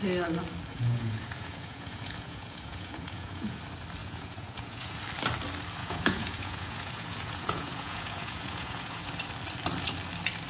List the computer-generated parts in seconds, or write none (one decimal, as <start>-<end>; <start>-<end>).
0.7-3.6; 4.0-5.0; 5.8-9.1

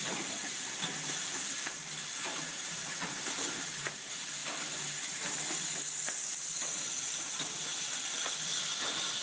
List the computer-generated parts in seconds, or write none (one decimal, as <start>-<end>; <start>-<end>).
0.0-4.4; 6.5-7.7

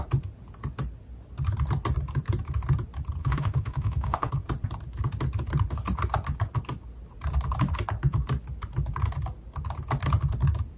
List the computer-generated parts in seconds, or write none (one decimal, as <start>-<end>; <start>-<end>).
3.2-4.3

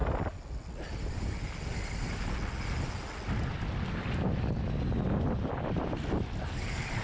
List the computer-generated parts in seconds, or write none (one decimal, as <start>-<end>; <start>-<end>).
none